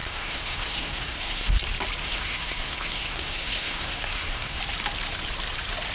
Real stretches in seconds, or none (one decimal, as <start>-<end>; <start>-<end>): 1.6-2.0; 4.6-5.9